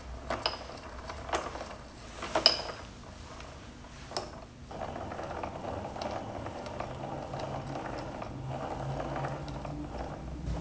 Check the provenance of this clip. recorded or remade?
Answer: recorded